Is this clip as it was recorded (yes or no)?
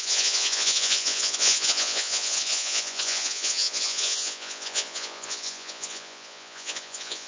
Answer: no